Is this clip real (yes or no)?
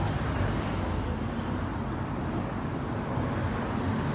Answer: yes